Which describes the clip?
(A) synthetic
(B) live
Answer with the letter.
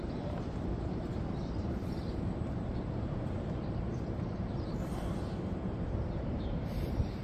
A